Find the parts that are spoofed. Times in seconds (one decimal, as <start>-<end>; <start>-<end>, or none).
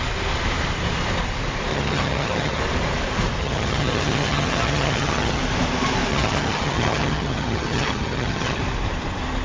1.7-2.6; 3.4-5.4; 6.1-8.6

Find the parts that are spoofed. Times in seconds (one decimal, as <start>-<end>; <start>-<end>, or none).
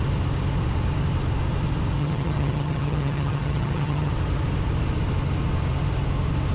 2.0-4.1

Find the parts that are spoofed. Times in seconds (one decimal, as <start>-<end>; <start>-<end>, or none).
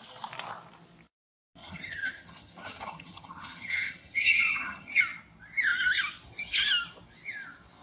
1.6-5.0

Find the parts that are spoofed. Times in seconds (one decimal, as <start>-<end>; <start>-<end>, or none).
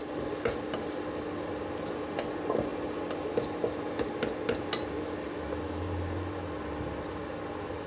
none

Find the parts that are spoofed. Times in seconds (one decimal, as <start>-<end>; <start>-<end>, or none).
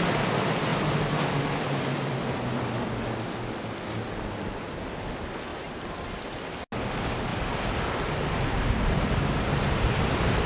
none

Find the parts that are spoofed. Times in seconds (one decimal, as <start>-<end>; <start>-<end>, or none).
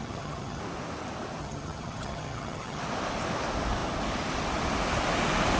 0.0-0.6; 1.4-2.8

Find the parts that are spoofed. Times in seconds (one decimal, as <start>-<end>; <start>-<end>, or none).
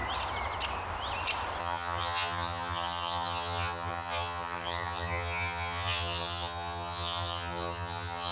1.6-8.3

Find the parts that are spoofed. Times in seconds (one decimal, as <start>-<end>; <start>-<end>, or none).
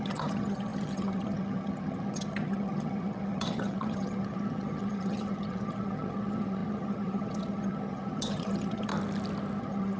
0.0-8.9; 9.6-10.0